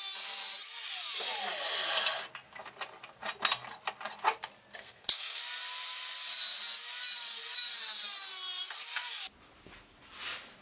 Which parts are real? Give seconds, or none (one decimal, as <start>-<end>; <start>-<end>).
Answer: 0.0-4.8; 5.4-10.6